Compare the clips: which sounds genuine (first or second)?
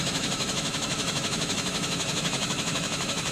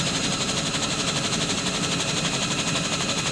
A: second